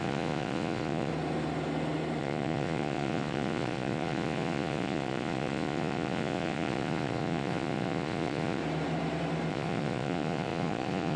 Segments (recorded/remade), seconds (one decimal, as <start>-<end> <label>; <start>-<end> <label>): 0.0-1.1 remade; 1.1-2.2 recorded; 2.2-8.6 remade; 8.6-9.5 recorded; 9.5-11.2 remade